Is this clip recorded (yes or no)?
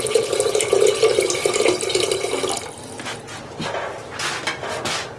yes